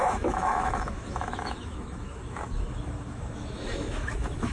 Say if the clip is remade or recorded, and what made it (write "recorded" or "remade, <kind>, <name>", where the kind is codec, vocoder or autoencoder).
remade, autoencoder, DAC-VAE